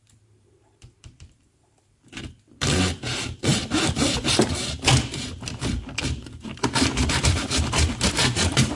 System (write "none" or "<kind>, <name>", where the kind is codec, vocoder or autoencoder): vocoder, BigVGAN v2